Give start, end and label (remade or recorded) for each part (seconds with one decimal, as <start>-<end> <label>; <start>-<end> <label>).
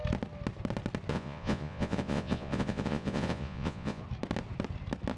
0.0-1.1 recorded; 1.1-4.0 remade; 4.0-5.2 recorded